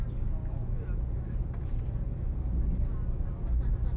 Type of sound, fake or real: real